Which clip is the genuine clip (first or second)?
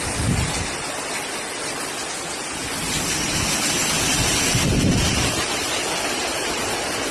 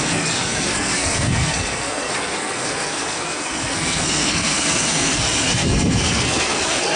first